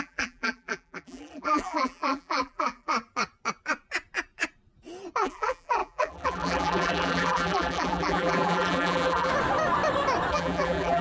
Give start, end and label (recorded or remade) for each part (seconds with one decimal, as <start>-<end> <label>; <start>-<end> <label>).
0.0-2.9 remade; 2.9-5.2 recorded; 5.2-9.3 remade; 9.3-10.3 recorded; 10.3-11.0 remade

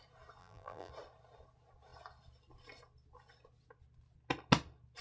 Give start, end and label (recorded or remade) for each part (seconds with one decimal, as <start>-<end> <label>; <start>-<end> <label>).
0.0-0.4 recorded; 0.4-0.9 remade; 0.9-5.0 recorded

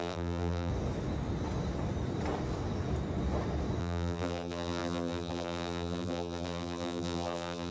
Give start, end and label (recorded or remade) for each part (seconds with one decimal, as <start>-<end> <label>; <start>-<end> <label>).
0.0-0.7 remade; 0.7-3.8 recorded; 3.8-7.7 remade

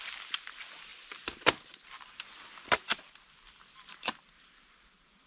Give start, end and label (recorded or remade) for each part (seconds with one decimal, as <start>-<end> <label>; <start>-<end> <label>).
0.0-5.3 remade

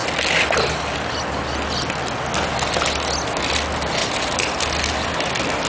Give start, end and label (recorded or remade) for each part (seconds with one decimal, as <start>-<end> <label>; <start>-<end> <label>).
0.0-4.0 recorded; 4.0-4.6 remade; 4.6-5.7 recorded

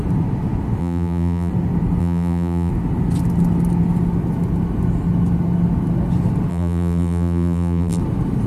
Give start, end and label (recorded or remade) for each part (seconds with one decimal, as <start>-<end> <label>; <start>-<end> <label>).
0.0-0.8 recorded; 0.8-1.5 remade; 1.5-2.0 recorded; 2.0-2.7 remade; 2.7-6.5 recorded; 6.5-8.0 remade; 8.0-8.5 recorded

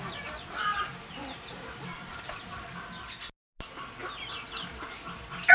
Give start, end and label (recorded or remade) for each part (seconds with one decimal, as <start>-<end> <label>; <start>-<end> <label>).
0.0-1.2 recorded; 1.2-2.4 remade; 2.4-5.5 recorded